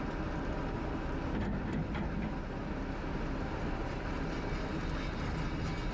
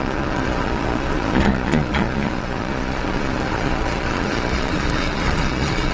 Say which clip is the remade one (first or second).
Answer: second